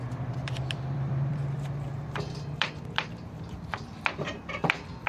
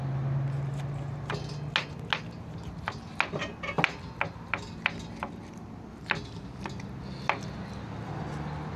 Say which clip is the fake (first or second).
first